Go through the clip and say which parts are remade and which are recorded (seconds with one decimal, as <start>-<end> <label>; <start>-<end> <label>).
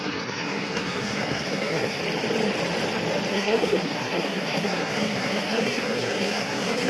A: 0.0-2.0 remade; 2.0-3.3 recorded; 3.3-6.9 remade